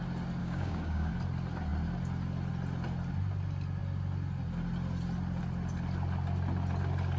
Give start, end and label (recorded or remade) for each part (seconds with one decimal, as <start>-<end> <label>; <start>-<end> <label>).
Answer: 0.0-0.4 recorded; 0.4-1.1 remade; 1.1-7.2 recorded